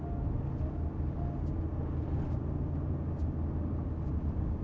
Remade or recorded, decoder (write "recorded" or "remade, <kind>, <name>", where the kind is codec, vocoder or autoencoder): recorded